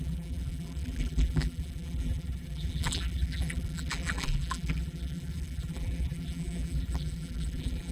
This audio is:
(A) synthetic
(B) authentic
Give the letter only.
A